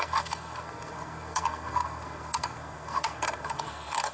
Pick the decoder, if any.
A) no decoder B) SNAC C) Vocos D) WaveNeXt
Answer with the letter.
B